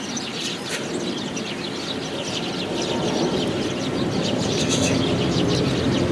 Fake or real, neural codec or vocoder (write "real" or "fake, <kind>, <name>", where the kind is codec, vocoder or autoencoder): real